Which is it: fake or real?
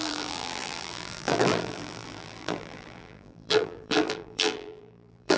fake